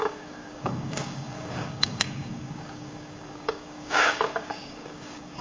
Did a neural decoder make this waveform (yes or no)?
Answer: yes